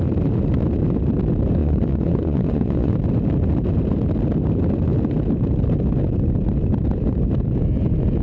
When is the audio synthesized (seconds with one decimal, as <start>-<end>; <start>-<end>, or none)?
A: 1.6-2.9